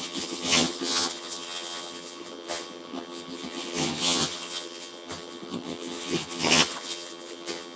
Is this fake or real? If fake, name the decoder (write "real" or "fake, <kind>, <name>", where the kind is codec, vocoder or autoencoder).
fake, vocoder, HiFi-GAN